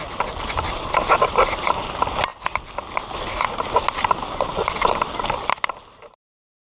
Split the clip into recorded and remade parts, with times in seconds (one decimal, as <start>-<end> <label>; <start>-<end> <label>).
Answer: 0.0-6.7 recorded